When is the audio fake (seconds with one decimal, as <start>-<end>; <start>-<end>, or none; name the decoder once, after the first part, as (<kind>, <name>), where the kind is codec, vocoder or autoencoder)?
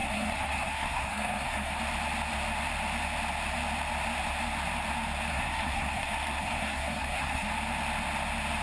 0.0-1.8 (codec, SNAC); 5.3-7.5